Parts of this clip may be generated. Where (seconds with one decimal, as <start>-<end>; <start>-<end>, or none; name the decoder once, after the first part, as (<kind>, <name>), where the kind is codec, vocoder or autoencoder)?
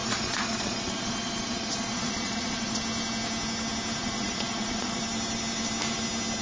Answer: 0.0-2.8 (vocoder, Vocos); 4.0-5.0